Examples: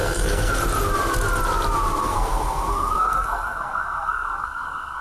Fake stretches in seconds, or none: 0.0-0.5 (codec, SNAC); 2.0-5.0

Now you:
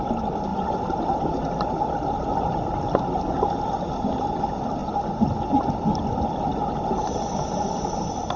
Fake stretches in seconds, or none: 0.5-3.7 (vocoder, BigVGAN v2)

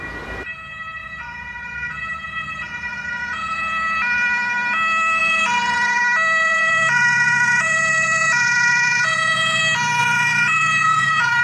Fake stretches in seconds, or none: 1.0-3.6 (vocoder, Vocos); 5.2-6.0; 6.4-9.6; 10.0-11.4

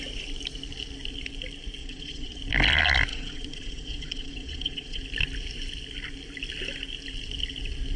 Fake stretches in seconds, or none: 1.8-2.4 (vocoder, Vocos); 3.1-5.0

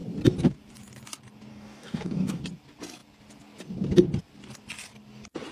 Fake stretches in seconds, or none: 1.5-2.4 (codec, DAC)

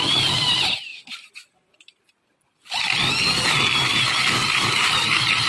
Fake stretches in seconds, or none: none

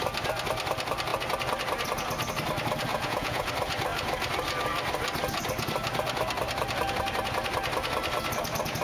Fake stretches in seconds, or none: 2.9-3.5 (vocoder, Vocos)